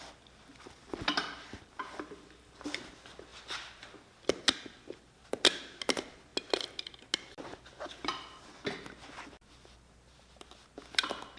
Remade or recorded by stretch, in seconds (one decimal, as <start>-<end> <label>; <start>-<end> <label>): 0.0-11.4 recorded